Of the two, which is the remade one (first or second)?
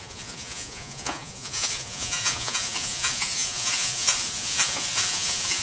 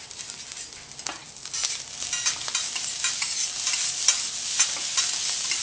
first